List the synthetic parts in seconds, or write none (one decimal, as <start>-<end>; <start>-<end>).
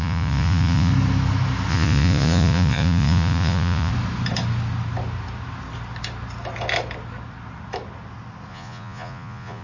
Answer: 0.0-0.9; 1.7-3.9; 8.5-9.6